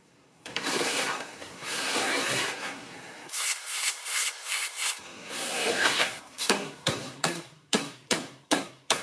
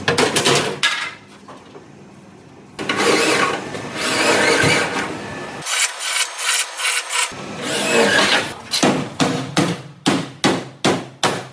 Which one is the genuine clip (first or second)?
second